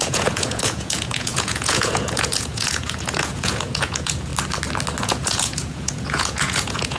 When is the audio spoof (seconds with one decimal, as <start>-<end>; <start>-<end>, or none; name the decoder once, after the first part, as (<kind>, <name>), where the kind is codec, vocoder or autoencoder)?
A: 0.0-4.3 (vocoder, Vocos); 5.0-7.0